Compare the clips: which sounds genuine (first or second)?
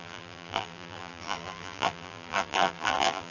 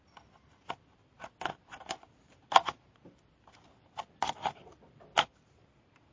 second